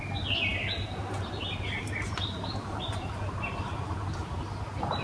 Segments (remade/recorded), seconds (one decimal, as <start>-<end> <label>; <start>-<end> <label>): 0.0-5.0 recorded